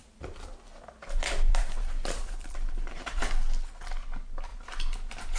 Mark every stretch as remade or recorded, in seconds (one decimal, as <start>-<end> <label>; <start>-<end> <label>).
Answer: 0.0-3.2 remade; 3.2-4.5 recorded; 4.5-5.4 remade